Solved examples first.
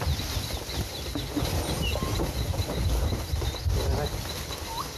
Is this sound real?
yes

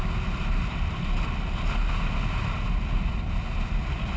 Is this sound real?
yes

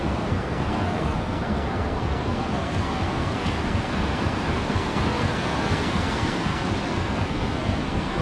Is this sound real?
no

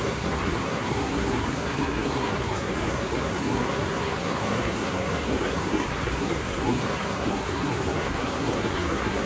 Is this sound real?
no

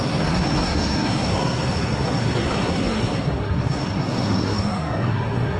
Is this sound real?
no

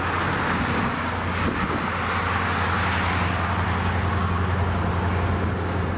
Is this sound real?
yes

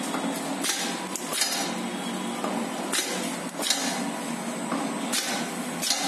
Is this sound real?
yes